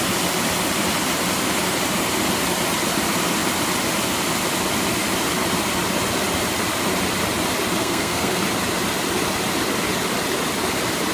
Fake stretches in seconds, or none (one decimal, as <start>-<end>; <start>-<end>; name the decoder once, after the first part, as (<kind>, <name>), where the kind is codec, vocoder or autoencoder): 7.8-8.4 (codec, SNAC)